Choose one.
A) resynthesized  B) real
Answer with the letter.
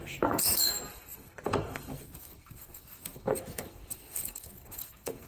A